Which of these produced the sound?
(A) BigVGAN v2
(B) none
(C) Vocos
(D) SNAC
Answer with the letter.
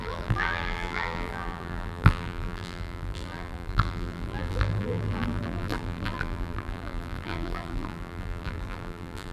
A